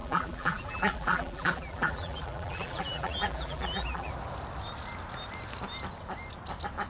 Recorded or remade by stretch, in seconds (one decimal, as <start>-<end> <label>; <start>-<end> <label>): 0.0-4.1 remade; 4.1-6.9 recorded

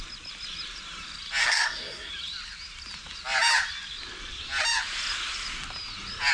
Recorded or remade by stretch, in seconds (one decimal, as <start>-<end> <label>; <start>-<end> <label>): 0.0-1.4 recorded; 1.4-2.1 remade; 2.1-6.3 recorded

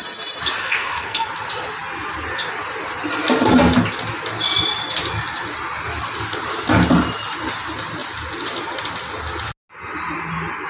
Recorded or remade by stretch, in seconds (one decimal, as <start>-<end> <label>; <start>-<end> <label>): 0.0-0.6 recorded; 0.6-1.3 remade; 1.3-10.7 recorded

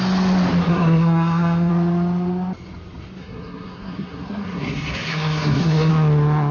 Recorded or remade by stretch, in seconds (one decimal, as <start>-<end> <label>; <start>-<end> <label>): 0.0-0.7 recorded; 0.7-1.7 remade; 1.7-3.2 recorded; 3.2-5.9 remade; 5.9-6.5 recorded

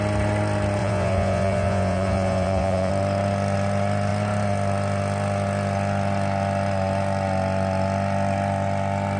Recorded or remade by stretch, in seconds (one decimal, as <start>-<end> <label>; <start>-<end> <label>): 0.0-0.8 recorded; 0.8-2.9 remade; 2.9-9.2 recorded